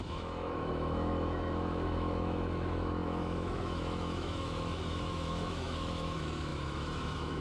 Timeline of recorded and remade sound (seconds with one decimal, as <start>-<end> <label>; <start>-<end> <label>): 0.0-7.4 remade